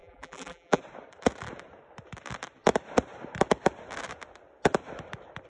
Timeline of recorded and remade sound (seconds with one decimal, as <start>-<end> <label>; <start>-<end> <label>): 0.0-0.8 remade; 0.8-5.5 recorded